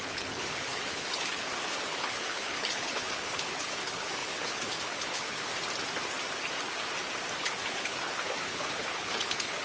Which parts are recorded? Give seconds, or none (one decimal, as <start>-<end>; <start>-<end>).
5.5-7.4